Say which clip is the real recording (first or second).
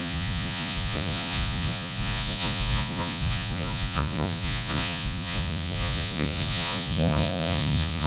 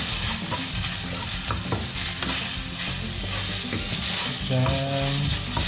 second